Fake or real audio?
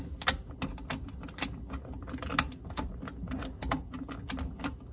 real